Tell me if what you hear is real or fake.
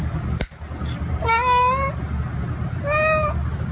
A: real